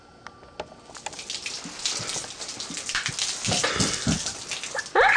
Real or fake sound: real